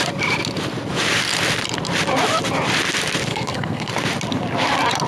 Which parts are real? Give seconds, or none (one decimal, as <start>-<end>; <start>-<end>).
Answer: 0.0-3.3; 3.9-5.1

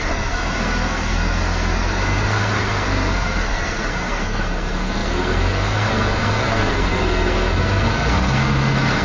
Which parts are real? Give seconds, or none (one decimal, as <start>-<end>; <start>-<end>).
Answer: none